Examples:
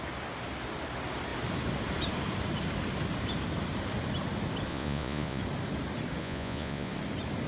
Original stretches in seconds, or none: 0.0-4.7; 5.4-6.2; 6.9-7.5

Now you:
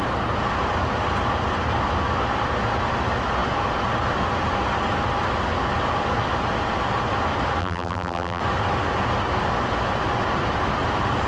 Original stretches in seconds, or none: 0.0-7.6; 8.4-11.3